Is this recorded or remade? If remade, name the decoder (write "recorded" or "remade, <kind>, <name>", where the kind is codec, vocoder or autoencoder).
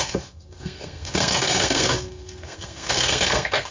remade, codec, SNAC